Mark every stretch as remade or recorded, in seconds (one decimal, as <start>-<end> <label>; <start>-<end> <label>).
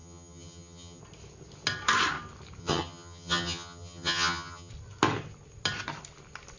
0.0-1.0 remade; 1.0-2.6 recorded; 2.6-4.7 remade; 4.7-6.6 recorded